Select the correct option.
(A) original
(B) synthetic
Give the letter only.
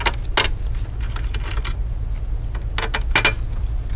A